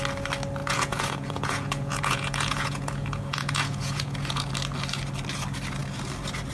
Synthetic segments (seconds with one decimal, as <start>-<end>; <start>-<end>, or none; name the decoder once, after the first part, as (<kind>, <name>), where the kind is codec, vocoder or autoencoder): 0.6-4.5 (vocoder, Vocos)